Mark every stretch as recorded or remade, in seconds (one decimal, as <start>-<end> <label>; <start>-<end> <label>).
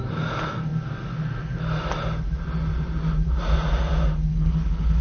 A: 0.0-4.3 recorded; 4.3-5.0 remade